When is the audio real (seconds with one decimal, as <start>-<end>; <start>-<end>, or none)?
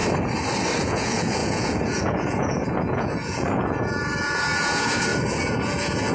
0.0-0.8